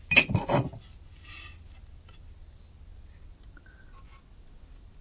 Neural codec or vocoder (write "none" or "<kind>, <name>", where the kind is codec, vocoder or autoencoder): none